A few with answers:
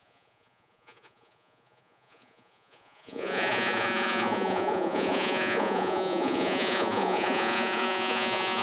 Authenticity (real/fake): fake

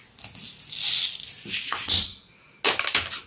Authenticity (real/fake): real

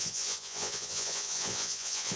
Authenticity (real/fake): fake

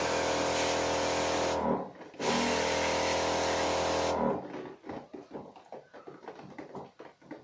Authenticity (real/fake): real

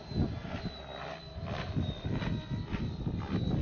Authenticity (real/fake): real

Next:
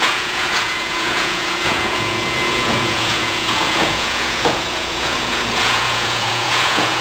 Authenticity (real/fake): fake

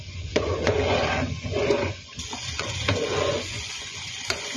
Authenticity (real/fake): fake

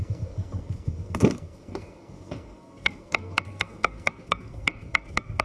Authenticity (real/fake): fake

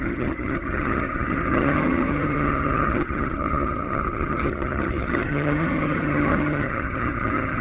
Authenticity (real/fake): fake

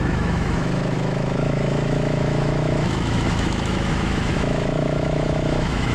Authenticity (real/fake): fake